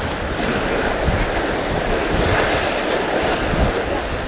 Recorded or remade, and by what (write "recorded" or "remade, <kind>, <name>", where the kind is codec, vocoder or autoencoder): recorded